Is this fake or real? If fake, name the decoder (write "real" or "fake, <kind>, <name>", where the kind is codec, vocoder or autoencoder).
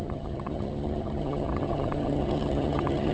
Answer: fake, vocoder, HiFi-GAN